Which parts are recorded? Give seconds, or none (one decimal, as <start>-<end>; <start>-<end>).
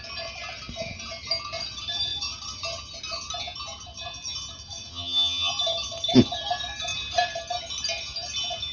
0.0-4.9; 5.5-8.7